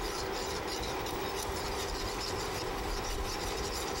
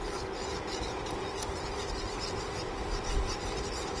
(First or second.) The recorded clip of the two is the second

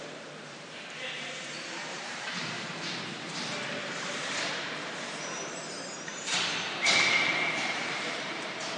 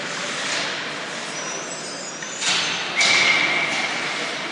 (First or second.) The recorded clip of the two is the second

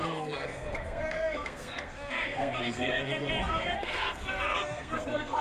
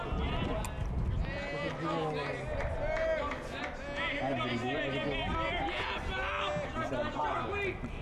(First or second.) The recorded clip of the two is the second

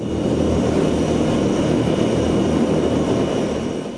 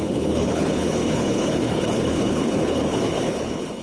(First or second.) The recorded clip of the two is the first